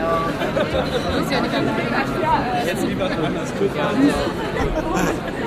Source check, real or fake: real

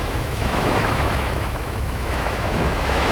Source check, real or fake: fake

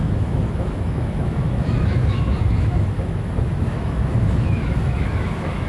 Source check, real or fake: fake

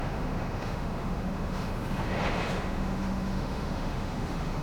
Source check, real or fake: fake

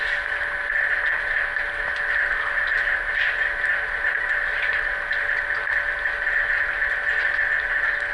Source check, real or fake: real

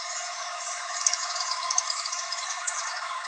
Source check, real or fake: fake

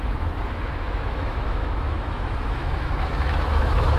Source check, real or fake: fake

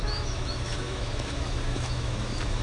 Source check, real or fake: fake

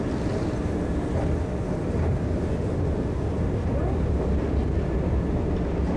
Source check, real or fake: real